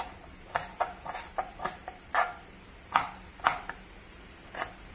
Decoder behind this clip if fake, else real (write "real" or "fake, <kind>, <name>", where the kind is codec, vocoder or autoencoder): real